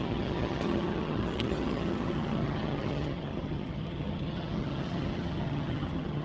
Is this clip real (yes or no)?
no